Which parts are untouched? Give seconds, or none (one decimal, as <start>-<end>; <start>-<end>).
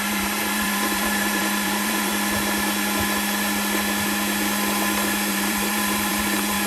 2.1-5.3